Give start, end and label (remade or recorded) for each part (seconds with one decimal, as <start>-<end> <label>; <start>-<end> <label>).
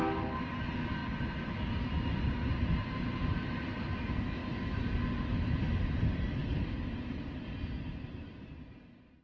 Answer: 0.0-6.4 recorded; 6.4-9.2 remade